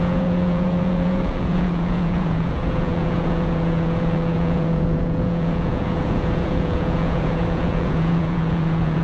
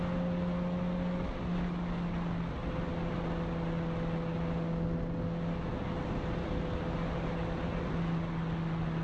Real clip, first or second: second